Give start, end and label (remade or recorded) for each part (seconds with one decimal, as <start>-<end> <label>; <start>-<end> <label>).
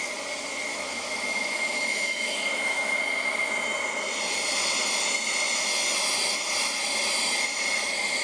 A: 0.0-0.7 recorded; 0.7-3.0 remade; 3.0-8.2 recorded